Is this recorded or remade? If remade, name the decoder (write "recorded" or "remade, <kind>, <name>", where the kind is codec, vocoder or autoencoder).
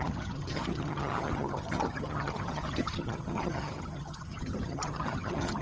remade, vocoder, HiFi-GAN